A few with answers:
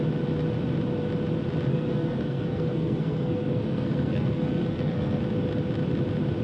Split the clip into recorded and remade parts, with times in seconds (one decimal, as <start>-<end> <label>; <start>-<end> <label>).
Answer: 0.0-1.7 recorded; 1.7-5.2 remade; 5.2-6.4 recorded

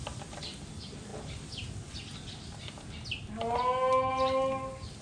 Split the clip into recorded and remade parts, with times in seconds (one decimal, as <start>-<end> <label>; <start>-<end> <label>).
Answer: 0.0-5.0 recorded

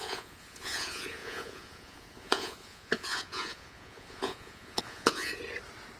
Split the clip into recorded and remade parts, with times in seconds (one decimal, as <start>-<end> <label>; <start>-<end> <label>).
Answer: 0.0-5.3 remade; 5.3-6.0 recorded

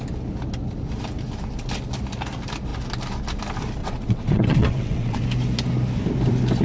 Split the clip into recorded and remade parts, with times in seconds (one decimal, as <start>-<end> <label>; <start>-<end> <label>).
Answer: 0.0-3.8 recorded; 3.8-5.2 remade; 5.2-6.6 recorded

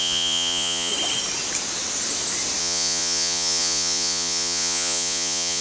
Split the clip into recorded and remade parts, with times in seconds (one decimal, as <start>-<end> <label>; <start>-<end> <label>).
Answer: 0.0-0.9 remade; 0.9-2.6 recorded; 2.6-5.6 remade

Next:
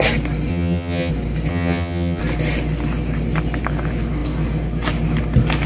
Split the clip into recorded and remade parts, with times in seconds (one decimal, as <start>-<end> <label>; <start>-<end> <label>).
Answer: 0.0-0.5 recorded; 0.5-1.1 remade; 1.1-1.5 recorded; 1.5-2.2 remade; 2.2-5.7 recorded

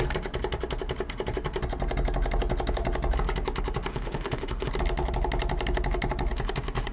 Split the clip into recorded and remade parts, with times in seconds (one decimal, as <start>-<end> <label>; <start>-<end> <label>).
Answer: 0.0-3.9 recorded; 3.9-4.7 remade; 4.7-6.9 recorded